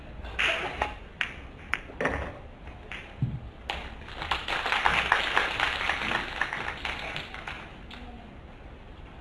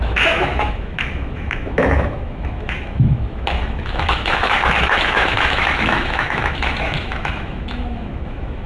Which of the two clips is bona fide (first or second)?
first